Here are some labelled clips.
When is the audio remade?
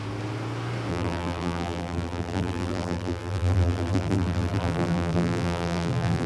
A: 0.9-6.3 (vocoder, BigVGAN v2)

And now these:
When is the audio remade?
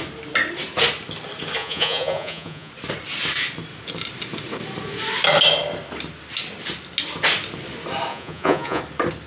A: 1.6-2.7 (vocoder, Vocos); 8.1-8.8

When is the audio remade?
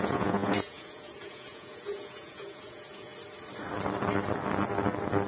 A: 0.0-3.1 (vocoder, Vocos)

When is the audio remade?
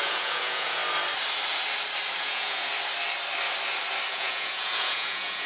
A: 0.0-0.8 (vocoder, Vocos); 2.2-2.7; 4.1-5.5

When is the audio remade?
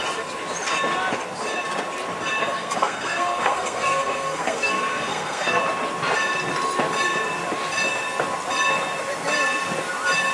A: 2.4-5.6 (codec, SNAC)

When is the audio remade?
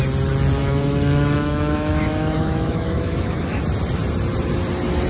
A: 0.6-3.6 (autoencoder, DAC-VAE)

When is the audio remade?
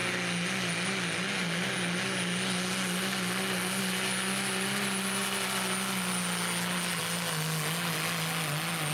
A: none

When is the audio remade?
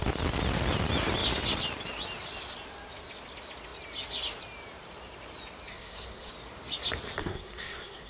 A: 5.7-6.3 (codec, SNAC); 7.2-8.1